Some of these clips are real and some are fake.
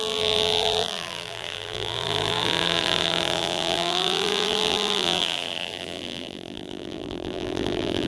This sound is fake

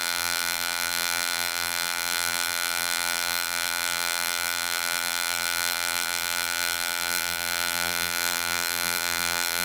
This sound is fake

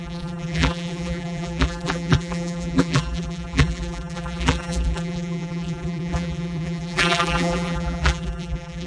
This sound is fake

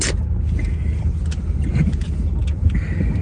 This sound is real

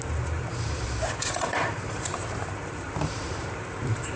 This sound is fake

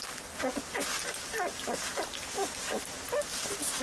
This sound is real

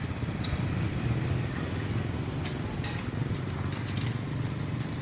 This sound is fake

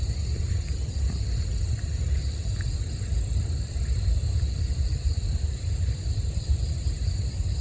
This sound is fake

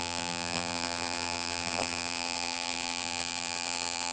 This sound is fake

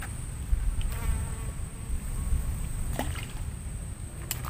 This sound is real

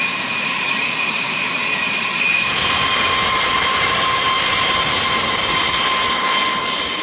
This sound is fake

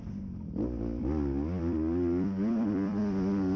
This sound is fake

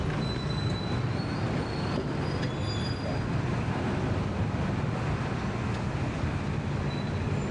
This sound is real